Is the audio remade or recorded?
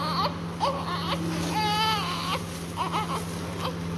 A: recorded